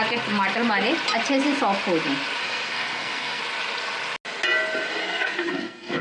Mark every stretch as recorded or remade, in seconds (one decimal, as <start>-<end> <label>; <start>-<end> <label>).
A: 0.0-2.4 recorded; 2.4-3.4 remade; 3.4-5.0 recorded; 5.0-6.0 remade